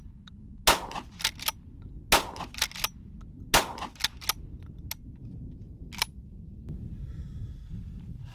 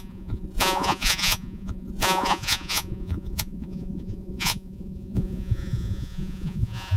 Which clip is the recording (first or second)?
first